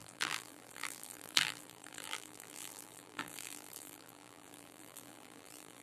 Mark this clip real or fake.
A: fake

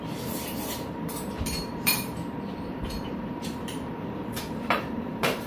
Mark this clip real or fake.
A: fake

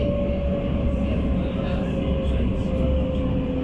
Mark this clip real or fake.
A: real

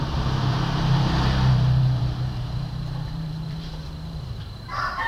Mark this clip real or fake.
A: fake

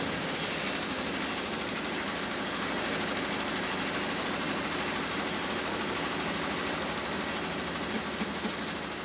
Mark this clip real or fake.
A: real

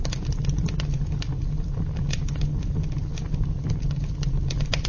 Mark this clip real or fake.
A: real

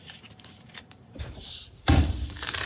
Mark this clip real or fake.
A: fake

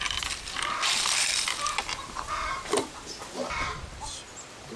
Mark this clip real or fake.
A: fake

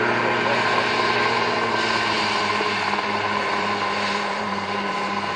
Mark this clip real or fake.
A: fake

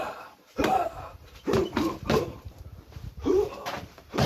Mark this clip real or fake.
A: fake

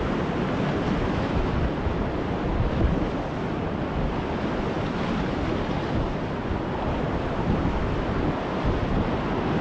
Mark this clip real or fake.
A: fake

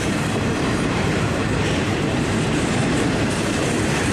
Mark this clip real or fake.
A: fake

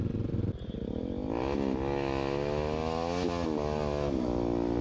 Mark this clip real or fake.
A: real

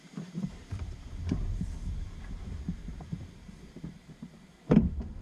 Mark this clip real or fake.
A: fake